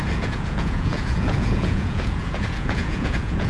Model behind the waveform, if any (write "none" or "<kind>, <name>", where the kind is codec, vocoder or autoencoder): vocoder, Vocos